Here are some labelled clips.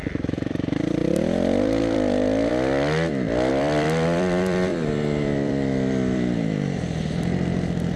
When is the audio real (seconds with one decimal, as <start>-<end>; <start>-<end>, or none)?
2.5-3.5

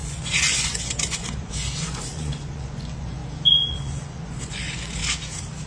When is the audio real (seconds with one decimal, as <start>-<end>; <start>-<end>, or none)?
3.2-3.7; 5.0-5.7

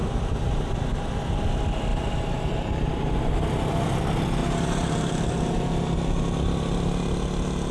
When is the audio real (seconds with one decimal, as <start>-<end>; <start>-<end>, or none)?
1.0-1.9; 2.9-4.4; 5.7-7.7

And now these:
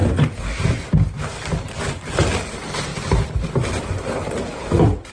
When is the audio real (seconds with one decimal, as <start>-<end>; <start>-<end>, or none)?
0.0-5.1

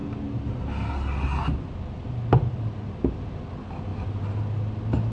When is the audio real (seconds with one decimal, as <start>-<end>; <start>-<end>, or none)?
3.1-5.1